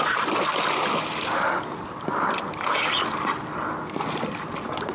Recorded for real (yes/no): yes